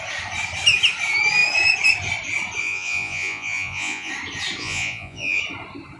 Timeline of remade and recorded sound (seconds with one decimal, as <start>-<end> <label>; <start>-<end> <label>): 0.0-2.6 recorded; 2.6-4.1 remade; 4.1-4.6 recorded; 4.6-5.4 remade; 5.4-6.0 recorded